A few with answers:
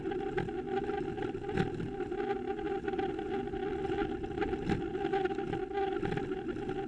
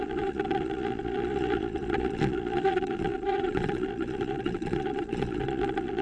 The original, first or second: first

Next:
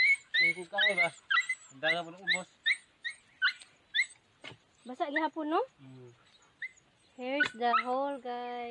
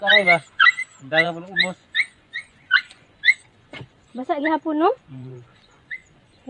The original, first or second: first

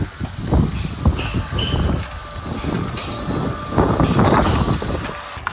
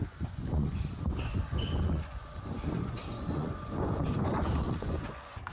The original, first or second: first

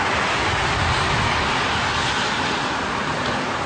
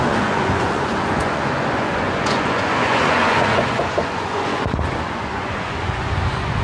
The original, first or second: first